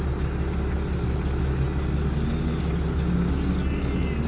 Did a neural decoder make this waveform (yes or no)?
no